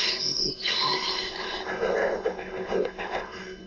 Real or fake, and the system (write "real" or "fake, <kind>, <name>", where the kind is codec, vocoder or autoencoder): fake, codec, SNAC